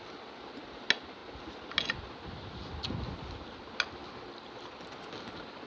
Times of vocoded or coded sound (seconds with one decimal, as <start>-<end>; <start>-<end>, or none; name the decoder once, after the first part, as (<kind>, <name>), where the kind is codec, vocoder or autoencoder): none